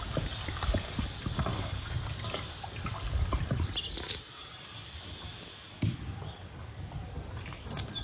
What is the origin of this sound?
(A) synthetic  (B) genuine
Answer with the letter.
B